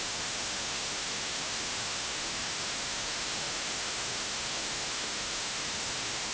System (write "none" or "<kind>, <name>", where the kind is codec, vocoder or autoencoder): autoencoder, DAC-VAE